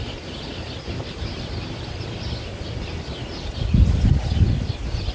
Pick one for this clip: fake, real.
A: real